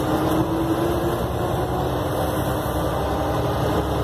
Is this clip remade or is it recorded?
recorded